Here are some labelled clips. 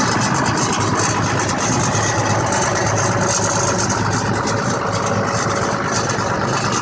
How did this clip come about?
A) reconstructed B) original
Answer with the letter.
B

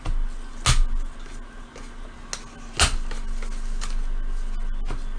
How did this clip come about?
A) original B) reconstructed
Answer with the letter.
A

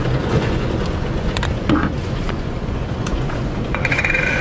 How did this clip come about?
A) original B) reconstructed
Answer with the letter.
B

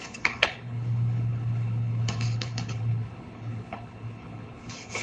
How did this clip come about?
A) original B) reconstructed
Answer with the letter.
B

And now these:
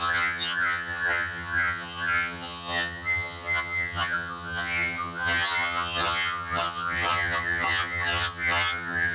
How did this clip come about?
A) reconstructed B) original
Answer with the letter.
A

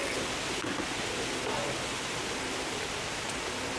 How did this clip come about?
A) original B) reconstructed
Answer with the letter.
A